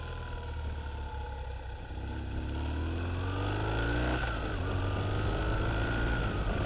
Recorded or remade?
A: recorded